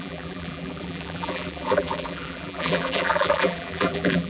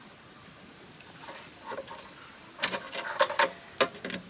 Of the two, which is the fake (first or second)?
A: first